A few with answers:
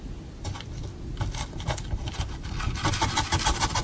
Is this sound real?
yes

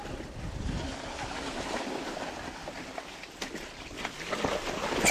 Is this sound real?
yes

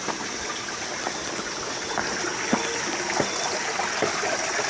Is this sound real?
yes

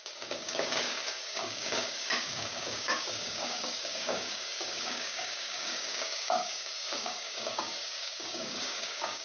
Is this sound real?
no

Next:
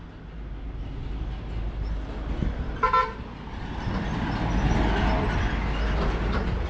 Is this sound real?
yes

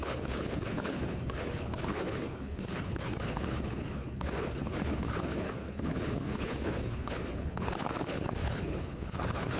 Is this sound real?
no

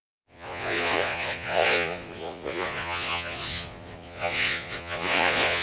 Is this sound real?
no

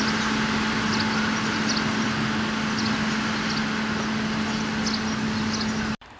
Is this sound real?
yes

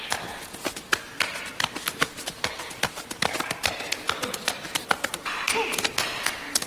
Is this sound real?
yes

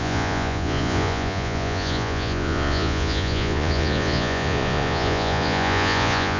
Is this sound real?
no